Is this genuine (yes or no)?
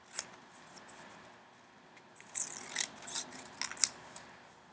yes